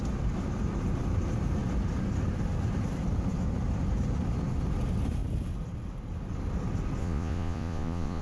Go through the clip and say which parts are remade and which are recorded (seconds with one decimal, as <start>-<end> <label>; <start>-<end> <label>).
0.0-7.0 recorded; 7.0-8.2 remade